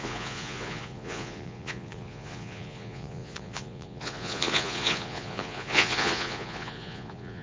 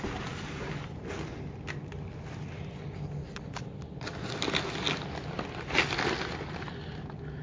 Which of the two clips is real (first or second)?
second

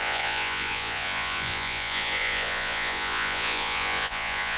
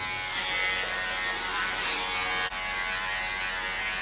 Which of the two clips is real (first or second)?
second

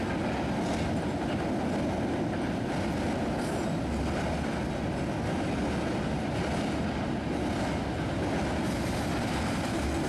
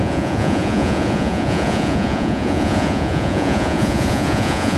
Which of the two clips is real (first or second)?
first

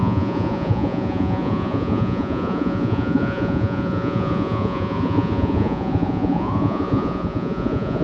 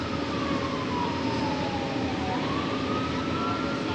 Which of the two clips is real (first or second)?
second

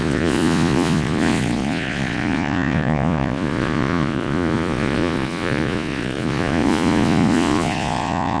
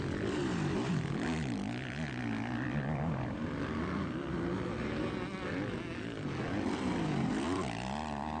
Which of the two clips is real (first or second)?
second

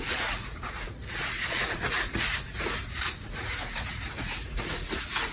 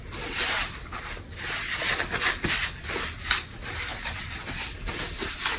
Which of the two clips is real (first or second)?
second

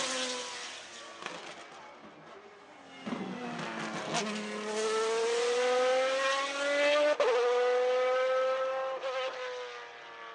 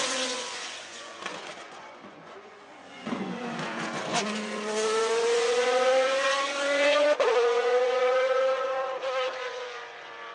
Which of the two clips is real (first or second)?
first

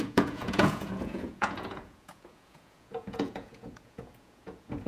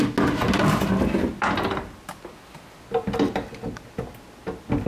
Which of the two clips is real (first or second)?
second